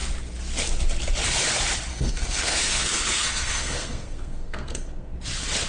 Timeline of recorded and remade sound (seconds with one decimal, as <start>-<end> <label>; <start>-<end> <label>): 0.0-1.9 recorded; 1.9-5.1 remade; 5.1-5.7 recorded

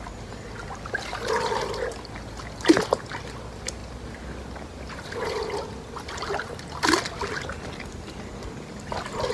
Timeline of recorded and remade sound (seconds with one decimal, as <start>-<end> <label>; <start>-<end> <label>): 0.0-9.3 recorded

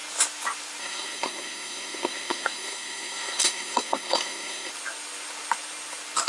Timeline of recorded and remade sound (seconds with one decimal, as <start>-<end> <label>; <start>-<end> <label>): 0.0-0.8 recorded; 0.8-4.7 remade; 4.7-6.3 recorded